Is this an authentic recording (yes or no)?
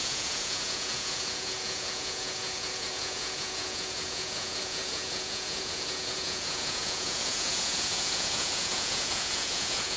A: no